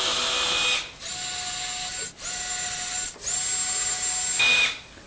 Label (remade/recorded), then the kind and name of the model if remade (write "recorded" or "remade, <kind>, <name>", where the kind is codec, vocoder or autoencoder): recorded